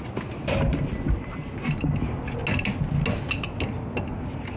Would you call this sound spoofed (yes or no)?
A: no